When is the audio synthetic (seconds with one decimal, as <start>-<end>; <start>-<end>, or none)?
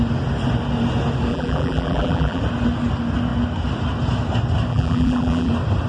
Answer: 1.3-2.4; 4.7-5.5